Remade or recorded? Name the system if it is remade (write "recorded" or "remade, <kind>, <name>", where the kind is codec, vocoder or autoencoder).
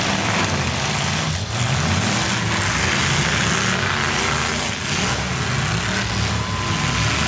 recorded